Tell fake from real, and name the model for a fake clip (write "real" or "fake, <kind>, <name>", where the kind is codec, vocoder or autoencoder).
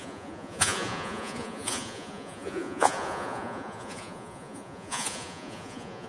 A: fake, vocoder, Vocos